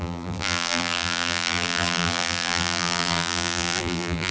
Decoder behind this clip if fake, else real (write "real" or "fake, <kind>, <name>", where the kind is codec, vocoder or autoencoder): fake, vocoder, BigVGAN v2